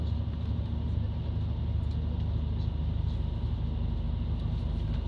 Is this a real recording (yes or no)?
yes